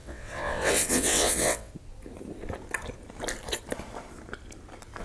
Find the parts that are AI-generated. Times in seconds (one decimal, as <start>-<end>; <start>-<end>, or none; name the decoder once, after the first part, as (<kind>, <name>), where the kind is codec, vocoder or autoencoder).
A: 0.0-1.7 (vocoder, WaveNeXt)